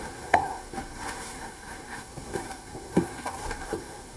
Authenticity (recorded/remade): remade